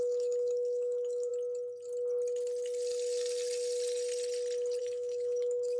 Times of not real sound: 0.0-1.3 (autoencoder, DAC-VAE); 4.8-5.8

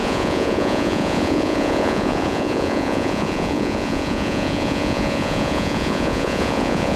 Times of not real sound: 0.0-7.0 (vocoder, Vocos)

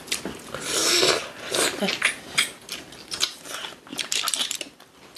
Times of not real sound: 3.9-4.6 (vocoder, BigVGAN v2)

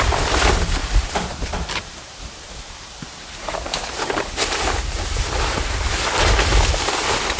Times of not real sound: 0.8-5.2 (vocoder, BigVGAN v2)

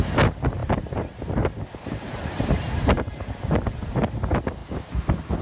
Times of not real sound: 0.6-3.8 (vocoder, BigVGAN v2); 4.6-5.4

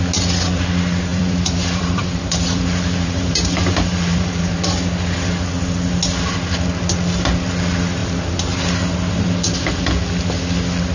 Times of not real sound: 1.1-4.6 (vocoder, BigVGAN v2)

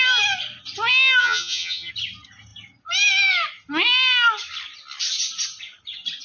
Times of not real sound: 1.2-1.9 (vocoder, HiFi-GAN)